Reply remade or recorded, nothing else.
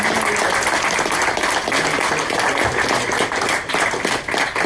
recorded